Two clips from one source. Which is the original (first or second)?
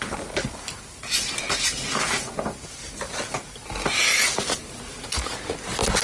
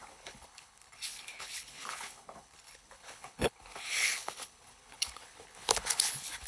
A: first